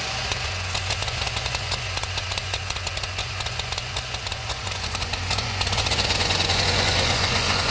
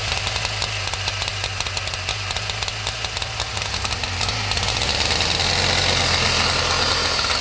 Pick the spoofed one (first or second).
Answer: first